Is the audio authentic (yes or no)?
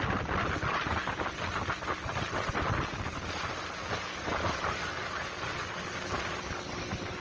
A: yes